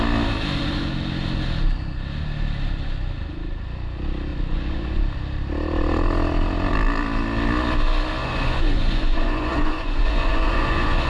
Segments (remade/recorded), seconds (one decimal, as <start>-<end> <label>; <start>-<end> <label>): 0.0-4.3 recorded; 4.3-5.0 remade; 5.0-8.2 recorded; 8.2-11.1 remade